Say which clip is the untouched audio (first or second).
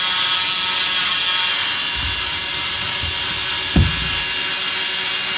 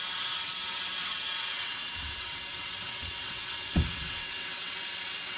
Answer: first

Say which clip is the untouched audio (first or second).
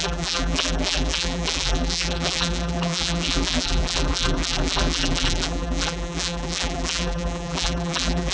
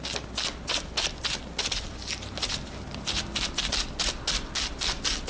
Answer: second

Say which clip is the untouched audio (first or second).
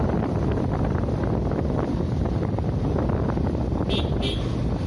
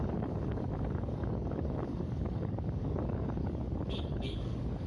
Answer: first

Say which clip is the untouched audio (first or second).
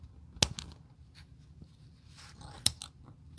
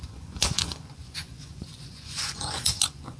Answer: first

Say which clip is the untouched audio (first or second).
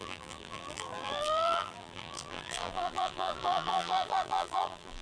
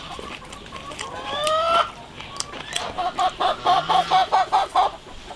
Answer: second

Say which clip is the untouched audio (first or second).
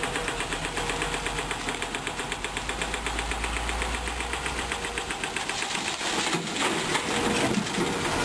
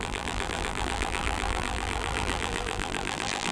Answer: first